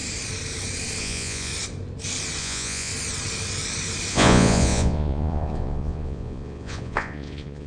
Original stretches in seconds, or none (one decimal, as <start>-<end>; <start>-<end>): 0.0-1.0; 1.5-2.4; 2.9-4.1